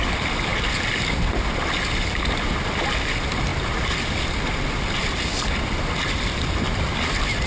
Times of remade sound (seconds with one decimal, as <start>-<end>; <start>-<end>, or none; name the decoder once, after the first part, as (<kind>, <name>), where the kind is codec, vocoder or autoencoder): none

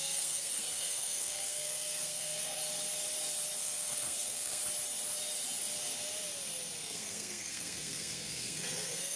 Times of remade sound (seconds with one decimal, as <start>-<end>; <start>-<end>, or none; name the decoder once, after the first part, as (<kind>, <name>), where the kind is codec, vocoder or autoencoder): 0.0-2.6 (codec, SNAC); 3.6-4.6; 6.8-9.2